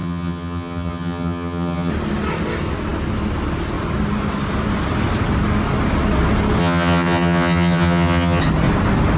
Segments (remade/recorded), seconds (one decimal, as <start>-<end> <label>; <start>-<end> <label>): 0.0-1.9 remade; 1.9-6.6 recorded; 6.6-8.4 remade; 8.4-9.2 recorded

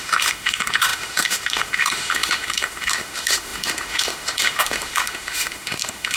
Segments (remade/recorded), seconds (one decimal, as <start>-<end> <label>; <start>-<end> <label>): 0.0-6.2 remade

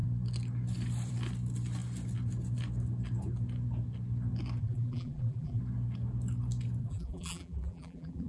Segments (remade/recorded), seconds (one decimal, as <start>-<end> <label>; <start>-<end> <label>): 0.0-4.6 recorded; 4.6-5.6 remade; 5.6-6.8 recorded; 6.8-8.3 remade

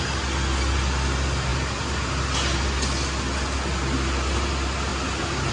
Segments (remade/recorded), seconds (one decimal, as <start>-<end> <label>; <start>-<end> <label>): 0.0-5.5 recorded